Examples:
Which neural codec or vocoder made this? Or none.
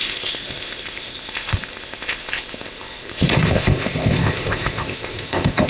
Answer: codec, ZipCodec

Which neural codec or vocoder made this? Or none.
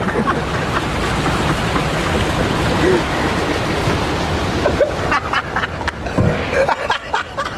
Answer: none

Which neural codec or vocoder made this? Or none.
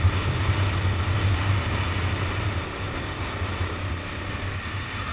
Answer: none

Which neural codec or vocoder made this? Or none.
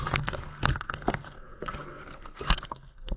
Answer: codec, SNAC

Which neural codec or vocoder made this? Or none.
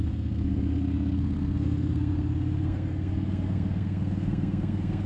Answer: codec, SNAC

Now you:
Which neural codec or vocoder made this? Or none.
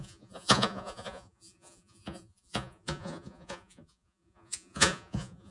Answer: vocoder, Vocos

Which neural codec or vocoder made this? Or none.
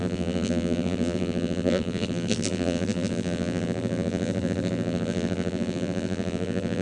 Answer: vocoder, BigVGAN v2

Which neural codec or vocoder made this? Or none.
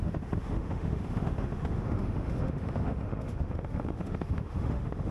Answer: autoencoder, DAC-VAE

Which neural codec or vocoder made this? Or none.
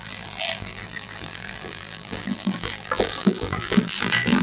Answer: vocoder, BigVGAN v2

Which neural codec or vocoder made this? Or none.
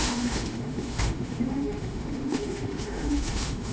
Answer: autoencoder, DAC-VAE